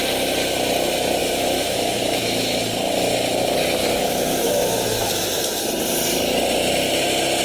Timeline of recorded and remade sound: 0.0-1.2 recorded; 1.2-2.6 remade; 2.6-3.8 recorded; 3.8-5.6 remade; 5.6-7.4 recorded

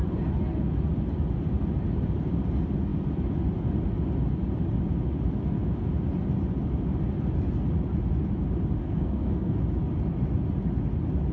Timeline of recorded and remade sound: 0.0-8.8 recorded; 8.8-9.6 remade; 9.6-11.3 recorded

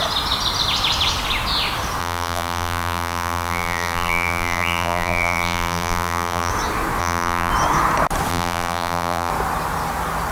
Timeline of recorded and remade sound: 0.0-2.0 recorded; 2.0-6.5 remade; 6.5-7.0 recorded; 7.0-7.5 remade; 7.5-8.3 recorded; 8.3-9.3 remade; 9.3-10.3 recorded